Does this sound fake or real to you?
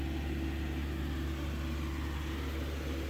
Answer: real